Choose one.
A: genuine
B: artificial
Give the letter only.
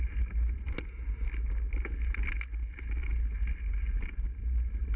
A